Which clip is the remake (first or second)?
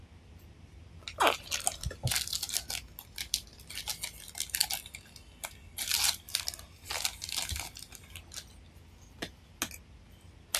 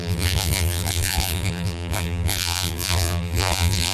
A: second